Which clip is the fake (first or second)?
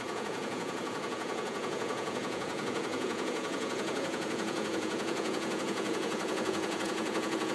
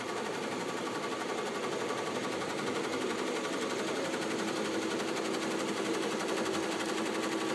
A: first